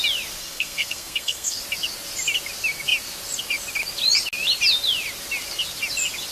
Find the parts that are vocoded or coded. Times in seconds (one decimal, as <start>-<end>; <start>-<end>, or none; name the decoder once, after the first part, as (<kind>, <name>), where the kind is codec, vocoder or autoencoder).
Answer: 0.4-1.6 (codec, SNAC)